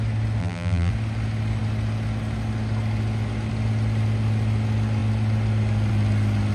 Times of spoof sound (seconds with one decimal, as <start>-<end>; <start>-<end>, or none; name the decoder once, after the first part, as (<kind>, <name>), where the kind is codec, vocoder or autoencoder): 0.4-0.9 (vocoder, BigVGAN v2)